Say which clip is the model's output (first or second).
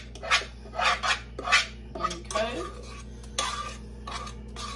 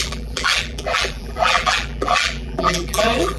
second